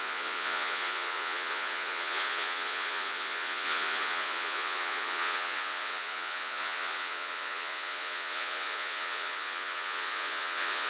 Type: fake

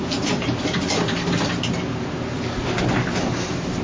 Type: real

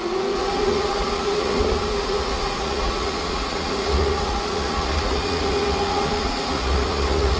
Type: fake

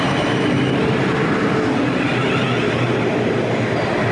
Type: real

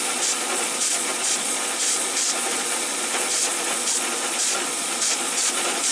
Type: fake